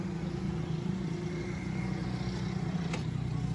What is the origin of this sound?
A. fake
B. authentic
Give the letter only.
B